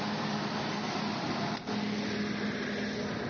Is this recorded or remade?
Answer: recorded